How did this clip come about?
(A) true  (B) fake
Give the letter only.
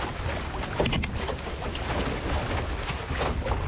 A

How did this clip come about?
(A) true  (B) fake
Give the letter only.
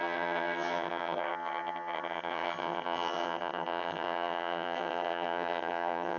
B